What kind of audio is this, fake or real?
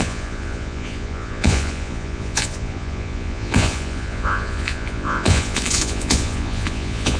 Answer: fake